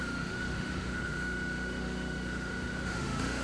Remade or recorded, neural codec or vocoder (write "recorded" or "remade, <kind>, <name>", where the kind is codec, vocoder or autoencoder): remade, autoencoder, DAC-VAE